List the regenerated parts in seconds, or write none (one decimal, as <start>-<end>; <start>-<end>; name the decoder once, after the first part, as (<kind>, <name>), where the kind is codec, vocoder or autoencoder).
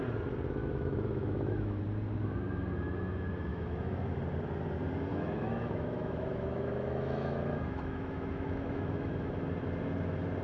0.6-1.8 (autoencoder, DAC-VAE); 3.5-4.2; 5.1-9.3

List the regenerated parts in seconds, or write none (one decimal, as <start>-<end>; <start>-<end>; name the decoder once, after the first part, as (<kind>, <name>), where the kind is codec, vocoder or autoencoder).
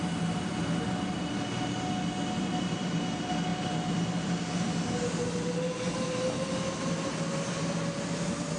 none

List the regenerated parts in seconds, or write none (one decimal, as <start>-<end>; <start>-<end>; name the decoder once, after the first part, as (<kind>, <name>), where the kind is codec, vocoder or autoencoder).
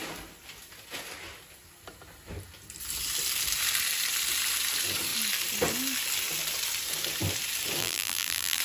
7.8-8.6 (vocoder, BigVGAN v2)